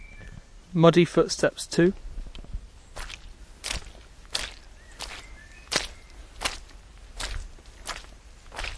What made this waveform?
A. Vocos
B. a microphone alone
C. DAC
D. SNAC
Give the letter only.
B